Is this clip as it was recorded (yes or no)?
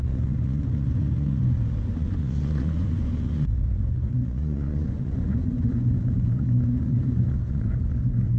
no